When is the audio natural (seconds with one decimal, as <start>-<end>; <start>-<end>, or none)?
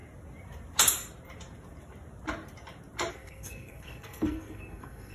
0.0-3.1